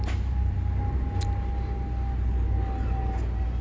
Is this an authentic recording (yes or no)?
yes